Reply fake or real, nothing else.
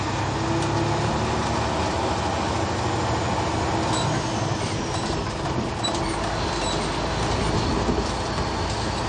real